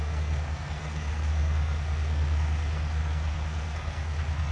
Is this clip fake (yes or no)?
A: yes